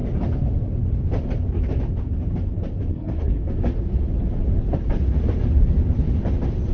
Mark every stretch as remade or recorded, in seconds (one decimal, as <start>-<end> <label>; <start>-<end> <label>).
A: 0.0-2.9 recorded; 2.9-3.4 remade; 3.4-6.7 recorded